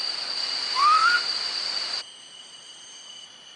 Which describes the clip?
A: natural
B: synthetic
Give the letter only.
A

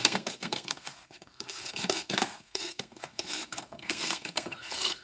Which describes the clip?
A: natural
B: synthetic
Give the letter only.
B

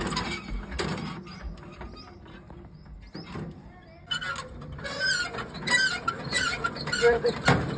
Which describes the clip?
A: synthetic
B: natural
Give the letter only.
B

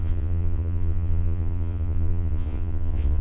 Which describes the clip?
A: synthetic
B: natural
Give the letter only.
A